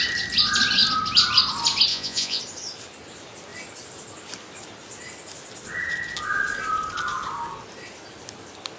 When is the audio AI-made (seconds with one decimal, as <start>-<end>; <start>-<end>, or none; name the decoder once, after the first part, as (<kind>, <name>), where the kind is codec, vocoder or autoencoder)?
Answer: 1.9-2.4 (vocoder, Vocos)